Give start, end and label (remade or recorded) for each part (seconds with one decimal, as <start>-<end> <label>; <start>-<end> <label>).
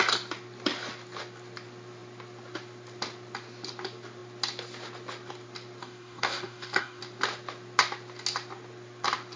0.0-5.8 recorded; 5.8-7.0 remade; 7.0-9.4 recorded